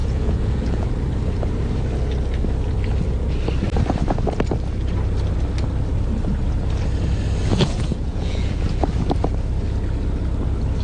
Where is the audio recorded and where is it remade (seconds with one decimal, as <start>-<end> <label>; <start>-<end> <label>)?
0.0-0.9 remade; 0.9-7.5 recorded; 7.5-8.6 remade; 8.6-10.8 recorded